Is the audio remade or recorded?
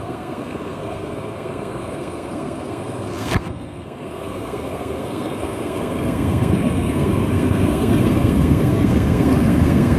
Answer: remade